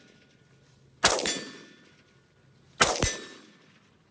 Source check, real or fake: real